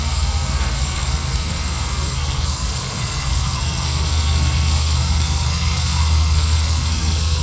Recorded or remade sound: remade